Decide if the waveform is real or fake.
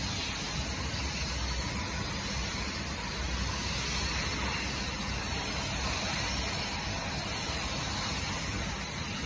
real